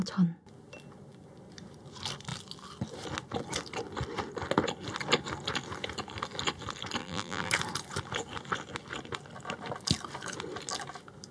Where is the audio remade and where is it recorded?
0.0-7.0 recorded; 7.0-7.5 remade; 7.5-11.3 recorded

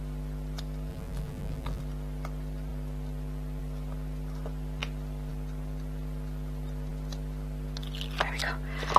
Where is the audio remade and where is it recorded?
0.0-0.9 recorded; 0.9-1.8 remade; 1.8-9.0 recorded

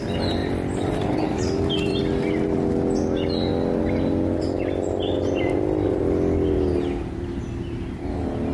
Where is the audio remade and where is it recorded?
0.0-0.4 recorded; 0.4-2.0 remade; 2.0-8.5 recorded

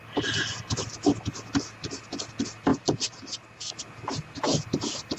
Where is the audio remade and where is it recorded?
0.0-2.7 recorded; 2.7-3.7 remade; 3.7-5.2 recorded